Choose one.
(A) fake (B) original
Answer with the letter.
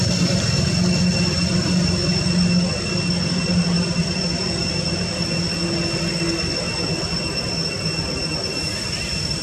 B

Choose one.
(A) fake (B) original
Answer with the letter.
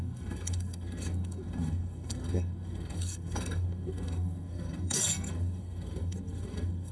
A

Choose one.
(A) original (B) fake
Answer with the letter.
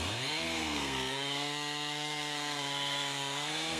B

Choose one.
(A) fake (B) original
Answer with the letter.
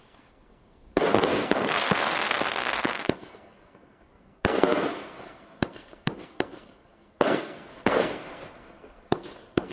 A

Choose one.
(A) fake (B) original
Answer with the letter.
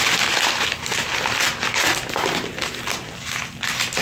B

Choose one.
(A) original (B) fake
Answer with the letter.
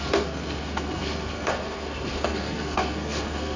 B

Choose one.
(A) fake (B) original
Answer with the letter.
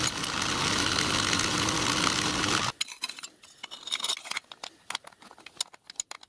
B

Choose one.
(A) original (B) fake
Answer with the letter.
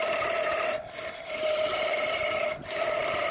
A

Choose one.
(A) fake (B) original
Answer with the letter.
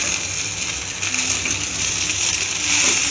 B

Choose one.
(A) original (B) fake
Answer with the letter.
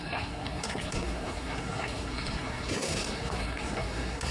B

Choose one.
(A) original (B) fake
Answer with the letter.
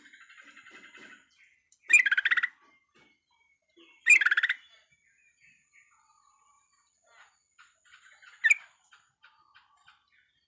A